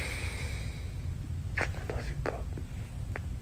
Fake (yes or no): no